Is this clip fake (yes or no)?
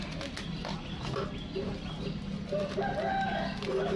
no